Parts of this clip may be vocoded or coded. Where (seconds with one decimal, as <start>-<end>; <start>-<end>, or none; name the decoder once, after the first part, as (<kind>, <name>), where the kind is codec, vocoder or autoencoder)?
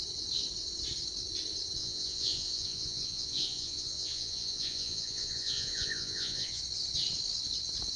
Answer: 1.8-6.6 (vocoder, Vocos)